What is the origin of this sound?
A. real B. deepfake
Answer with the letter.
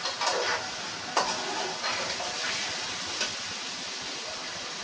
A